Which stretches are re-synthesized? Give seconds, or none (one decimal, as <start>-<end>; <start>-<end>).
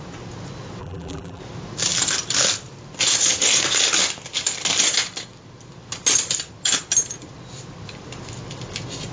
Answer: 0.8-1.4